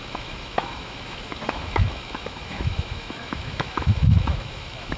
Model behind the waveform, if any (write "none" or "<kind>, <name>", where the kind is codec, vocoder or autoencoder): autoencoder, DAC-VAE